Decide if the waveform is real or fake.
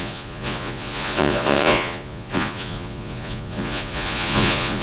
fake